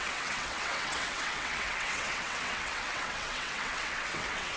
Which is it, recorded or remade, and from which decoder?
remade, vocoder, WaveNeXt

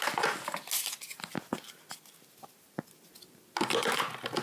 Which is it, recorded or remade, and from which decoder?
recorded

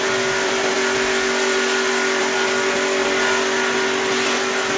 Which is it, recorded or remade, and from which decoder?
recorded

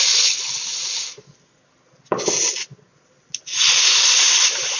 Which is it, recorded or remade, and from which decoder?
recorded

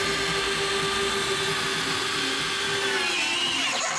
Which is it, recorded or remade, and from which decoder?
recorded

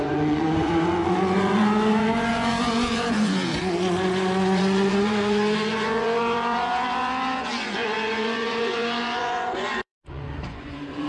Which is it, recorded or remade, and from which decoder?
remade, vocoder, Vocos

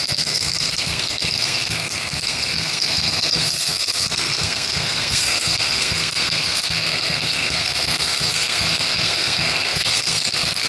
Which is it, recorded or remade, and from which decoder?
remade, codec, SNAC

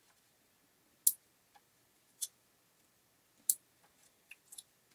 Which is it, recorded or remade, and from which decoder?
recorded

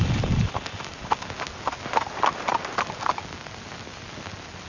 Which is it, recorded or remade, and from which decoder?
recorded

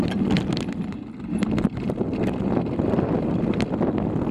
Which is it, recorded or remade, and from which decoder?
recorded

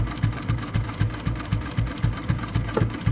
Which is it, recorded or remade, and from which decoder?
remade, vocoder, BigVGAN v2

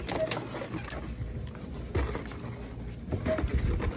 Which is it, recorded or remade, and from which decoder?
recorded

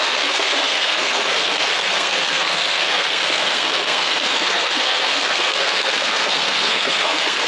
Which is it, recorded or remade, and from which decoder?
remade, codec, SNAC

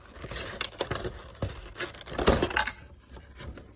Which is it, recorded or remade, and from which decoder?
recorded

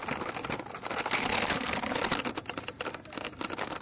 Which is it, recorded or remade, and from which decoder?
recorded